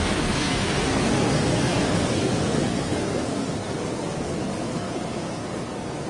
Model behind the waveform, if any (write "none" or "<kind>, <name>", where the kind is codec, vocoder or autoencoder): codec, SNAC